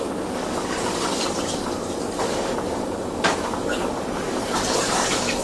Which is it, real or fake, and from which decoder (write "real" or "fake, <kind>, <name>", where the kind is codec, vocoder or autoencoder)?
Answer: fake, codec, DAC